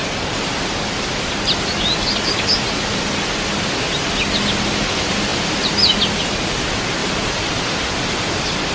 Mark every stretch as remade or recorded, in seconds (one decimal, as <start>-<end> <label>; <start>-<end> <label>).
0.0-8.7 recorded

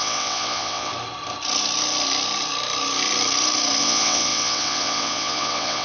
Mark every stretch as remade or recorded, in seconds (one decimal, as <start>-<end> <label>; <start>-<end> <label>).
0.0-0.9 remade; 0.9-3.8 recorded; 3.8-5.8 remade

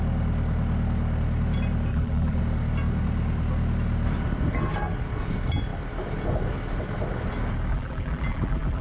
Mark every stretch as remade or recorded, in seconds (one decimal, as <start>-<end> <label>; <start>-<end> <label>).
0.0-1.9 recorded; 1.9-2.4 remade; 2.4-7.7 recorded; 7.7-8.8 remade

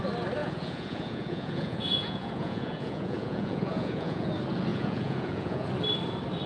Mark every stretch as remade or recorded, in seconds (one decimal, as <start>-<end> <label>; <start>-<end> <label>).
0.0-0.4 recorded; 0.4-4.3 remade; 4.3-4.7 recorded; 4.7-5.7 remade; 5.7-6.5 recorded